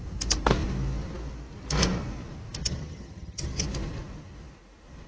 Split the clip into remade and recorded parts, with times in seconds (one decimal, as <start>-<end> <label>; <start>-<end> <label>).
0.0-2.6 recorded; 2.6-3.6 remade; 3.6-5.1 recorded